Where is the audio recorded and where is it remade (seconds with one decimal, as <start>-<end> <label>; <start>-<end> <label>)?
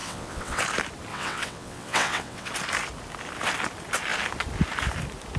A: 0.0-0.6 remade; 0.6-1.1 recorded; 1.1-2.5 remade; 2.5-5.4 recorded